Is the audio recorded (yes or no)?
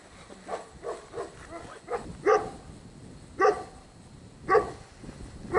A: yes